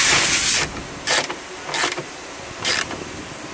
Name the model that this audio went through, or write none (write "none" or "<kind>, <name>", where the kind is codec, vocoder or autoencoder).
vocoder, BigVGAN v2